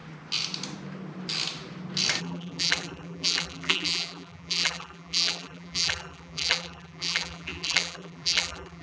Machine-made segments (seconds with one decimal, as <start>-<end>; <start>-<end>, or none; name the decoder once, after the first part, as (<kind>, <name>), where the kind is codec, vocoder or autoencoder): 2.2-8.8 (vocoder, BigVGAN v2)